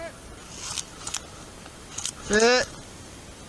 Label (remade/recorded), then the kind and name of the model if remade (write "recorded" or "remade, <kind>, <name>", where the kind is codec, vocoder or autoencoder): recorded